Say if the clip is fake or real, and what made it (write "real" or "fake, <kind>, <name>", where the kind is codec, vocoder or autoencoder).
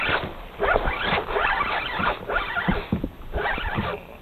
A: real